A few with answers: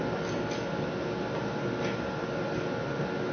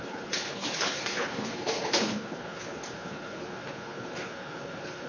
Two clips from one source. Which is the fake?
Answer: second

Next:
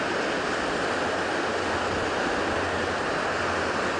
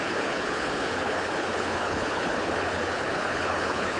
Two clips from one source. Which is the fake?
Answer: second